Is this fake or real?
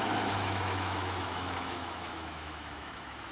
fake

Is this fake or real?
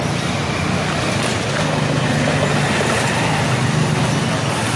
real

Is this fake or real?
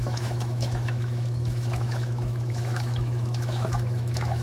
fake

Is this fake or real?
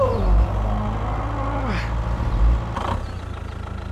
real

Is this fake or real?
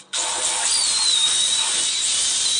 real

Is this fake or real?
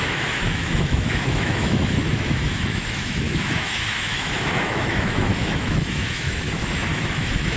fake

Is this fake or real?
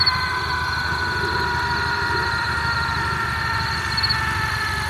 real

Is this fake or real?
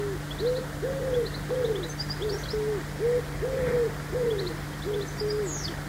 real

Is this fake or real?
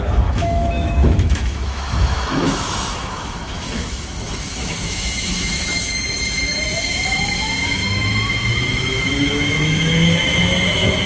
fake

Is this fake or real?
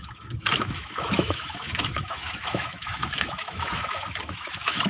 fake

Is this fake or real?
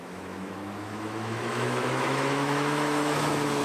fake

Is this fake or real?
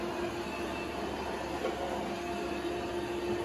real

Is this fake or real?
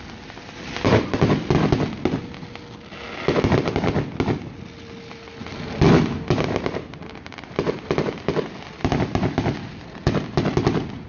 real